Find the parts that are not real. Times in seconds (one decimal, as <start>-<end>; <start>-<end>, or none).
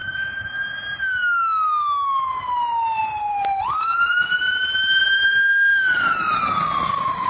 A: none